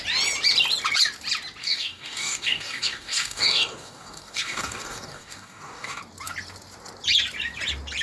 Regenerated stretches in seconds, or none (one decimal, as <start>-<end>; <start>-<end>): 1.6-6.0